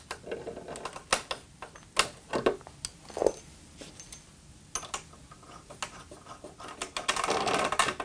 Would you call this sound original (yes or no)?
yes